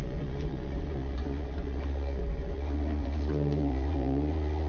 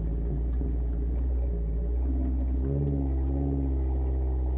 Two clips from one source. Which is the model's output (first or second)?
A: first